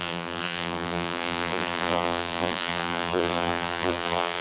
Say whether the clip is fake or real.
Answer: fake